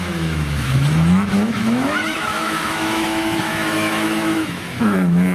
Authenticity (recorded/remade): remade